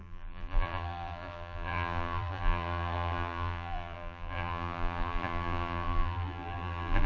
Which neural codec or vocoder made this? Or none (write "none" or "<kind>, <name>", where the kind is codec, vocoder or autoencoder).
vocoder, BigVGAN v2